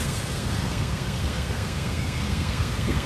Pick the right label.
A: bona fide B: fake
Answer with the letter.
B